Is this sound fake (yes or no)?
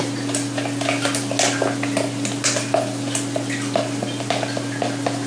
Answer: no